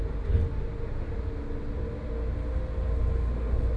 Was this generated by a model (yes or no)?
no